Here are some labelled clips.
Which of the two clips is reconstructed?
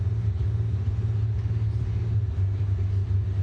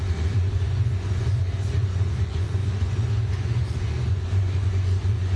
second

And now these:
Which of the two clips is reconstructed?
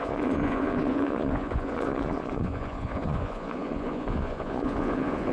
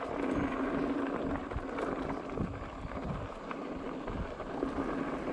first